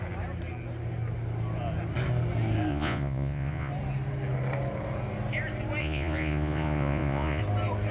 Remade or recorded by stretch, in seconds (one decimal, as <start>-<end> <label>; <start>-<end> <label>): 0.0-2.7 recorded; 2.7-3.7 remade; 3.7-5.8 recorded; 5.8-7.4 remade; 7.4-7.9 recorded